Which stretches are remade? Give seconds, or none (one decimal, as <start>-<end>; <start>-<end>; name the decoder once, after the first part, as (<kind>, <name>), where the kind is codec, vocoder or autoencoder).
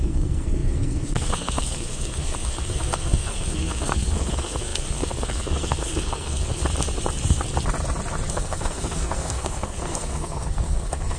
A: 0.0-6.6 (codec, SNAC); 8.3-11.2